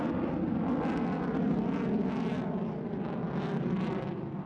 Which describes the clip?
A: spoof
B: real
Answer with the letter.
B